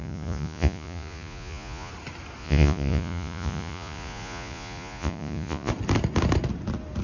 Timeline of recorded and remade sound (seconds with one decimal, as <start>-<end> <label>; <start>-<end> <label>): 0.0-1.9 remade; 1.9-2.4 recorded; 2.4-5.7 remade; 5.7-7.0 recorded